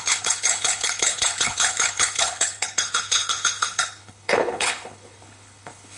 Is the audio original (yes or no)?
no